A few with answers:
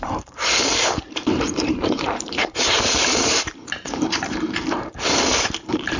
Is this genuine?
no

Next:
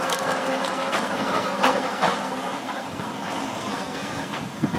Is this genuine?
no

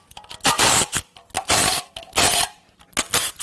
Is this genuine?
yes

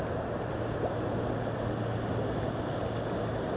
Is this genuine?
yes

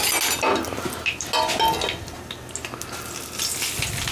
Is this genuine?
yes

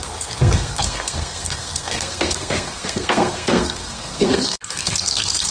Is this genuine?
no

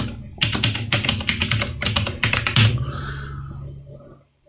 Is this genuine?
yes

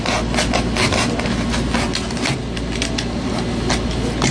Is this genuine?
yes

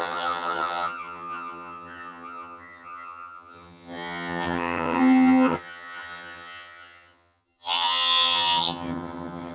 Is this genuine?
no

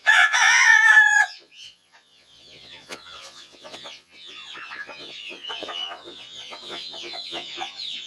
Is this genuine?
no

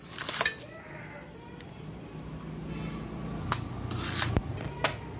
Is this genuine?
yes